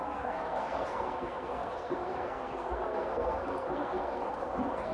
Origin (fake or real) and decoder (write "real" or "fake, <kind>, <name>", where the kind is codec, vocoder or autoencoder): fake, codec, SNAC